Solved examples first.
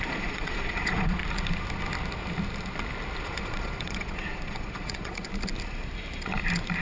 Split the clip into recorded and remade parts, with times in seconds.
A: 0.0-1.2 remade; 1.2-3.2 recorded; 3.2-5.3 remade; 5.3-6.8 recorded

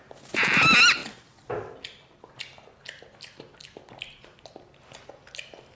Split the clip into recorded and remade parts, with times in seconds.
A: 0.0-5.7 recorded